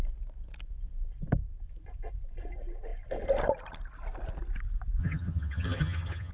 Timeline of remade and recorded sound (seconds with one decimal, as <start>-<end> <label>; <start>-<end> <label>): 0.0-5.0 recorded; 5.0-6.3 remade